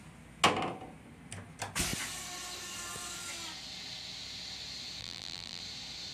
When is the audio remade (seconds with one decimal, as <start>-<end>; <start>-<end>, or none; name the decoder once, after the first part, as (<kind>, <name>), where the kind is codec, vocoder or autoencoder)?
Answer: 5.0-5.6 (vocoder, BigVGAN v2)